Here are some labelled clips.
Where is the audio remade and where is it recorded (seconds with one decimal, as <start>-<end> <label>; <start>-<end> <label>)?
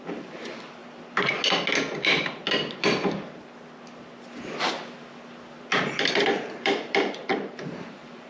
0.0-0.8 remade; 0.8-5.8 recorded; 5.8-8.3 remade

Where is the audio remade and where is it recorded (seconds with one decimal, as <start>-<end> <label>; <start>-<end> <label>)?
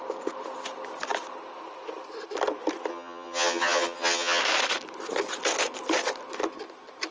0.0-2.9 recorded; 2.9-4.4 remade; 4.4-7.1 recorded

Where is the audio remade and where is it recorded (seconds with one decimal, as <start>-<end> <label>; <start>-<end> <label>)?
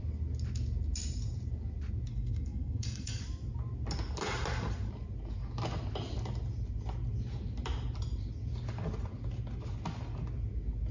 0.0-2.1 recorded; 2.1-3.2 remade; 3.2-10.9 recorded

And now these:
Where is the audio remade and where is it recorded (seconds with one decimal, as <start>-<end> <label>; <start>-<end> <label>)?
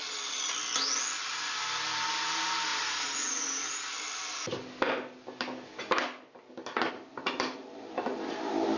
0.0-2.1 recorded; 2.1-2.7 remade; 2.7-6.9 recorded; 6.9-8.8 remade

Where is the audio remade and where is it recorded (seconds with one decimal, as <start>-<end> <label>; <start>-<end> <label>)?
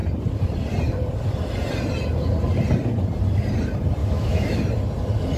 0.0-4.0 recorded; 4.0-4.6 remade; 4.6-5.4 recorded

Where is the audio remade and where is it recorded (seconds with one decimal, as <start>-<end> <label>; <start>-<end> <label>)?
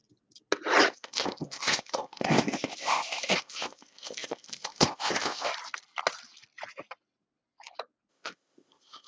0.0-0.9 recorded; 0.9-5.5 remade; 5.5-8.1 recorded; 8.1-9.1 remade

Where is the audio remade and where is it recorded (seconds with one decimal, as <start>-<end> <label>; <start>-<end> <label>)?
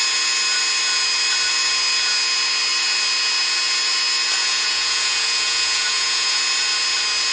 0.0-4.4 recorded; 4.4-6.4 remade; 6.4-7.3 recorded